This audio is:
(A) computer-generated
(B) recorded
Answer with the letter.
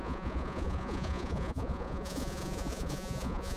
A